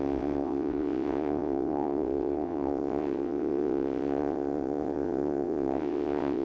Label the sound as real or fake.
fake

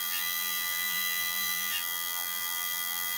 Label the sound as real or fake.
fake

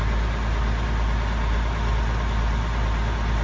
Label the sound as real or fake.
real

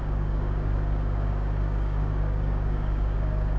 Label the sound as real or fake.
fake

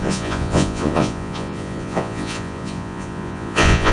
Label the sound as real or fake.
fake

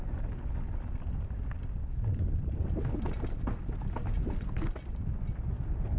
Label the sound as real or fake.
real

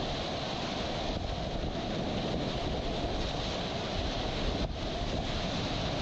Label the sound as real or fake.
real